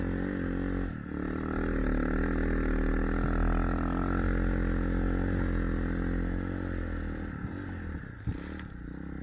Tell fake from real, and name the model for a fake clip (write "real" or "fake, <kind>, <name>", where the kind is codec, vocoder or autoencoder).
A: real